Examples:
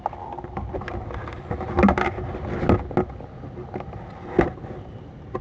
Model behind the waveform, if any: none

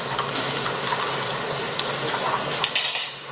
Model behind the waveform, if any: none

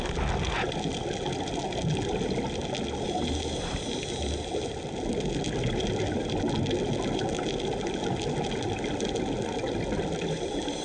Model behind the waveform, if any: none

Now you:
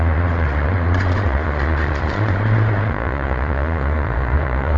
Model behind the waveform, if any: vocoder, Vocos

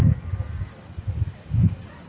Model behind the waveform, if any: none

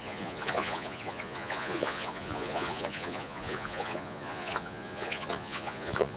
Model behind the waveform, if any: vocoder, Vocos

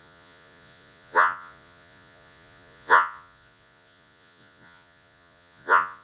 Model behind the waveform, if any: vocoder, Vocos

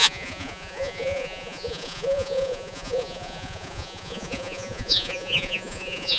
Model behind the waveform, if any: vocoder, Vocos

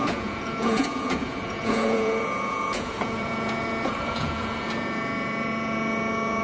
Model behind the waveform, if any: vocoder, Vocos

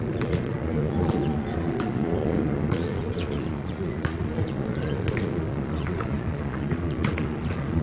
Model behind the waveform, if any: vocoder, Vocos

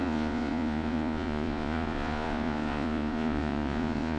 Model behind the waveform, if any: vocoder, Vocos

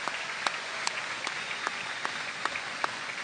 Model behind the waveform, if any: vocoder, Vocos